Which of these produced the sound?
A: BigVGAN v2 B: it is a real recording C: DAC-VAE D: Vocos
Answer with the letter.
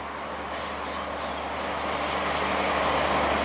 B